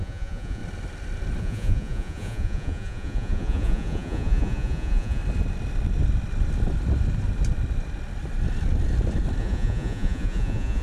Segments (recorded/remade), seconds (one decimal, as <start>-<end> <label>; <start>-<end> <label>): 0.0-0.6 remade; 0.6-1.4 recorded; 1.4-5.2 remade; 5.2-9.4 recorded; 9.4-10.8 remade

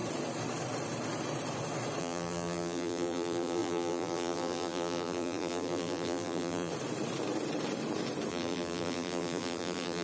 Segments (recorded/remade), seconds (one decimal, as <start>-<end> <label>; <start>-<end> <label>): 0.0-2.0 recorded; 2.0-6.7 remade; 6.7-8.3 recorded; 8.3-10.0 remade

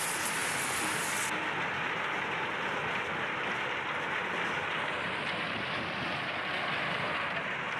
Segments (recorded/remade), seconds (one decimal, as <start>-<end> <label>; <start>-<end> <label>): 0.0-7.8 recorded